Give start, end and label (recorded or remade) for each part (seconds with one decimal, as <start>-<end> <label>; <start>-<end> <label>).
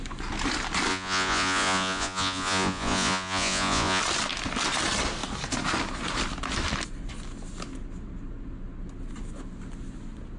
0.0-0.9 recorded; 0.9-4.0 remade; 4.0-10.4 recorded